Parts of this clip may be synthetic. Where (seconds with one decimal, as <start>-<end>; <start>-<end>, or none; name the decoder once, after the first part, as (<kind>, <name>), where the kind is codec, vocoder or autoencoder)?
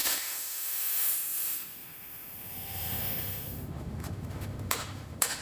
0.0-5.4 (autoencoder, DAC-VAE)